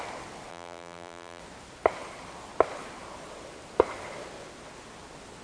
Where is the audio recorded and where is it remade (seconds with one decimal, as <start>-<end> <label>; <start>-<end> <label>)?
0.0-0.5 recorded; 0.5-1.4 remade; 1.4-5.4 recorded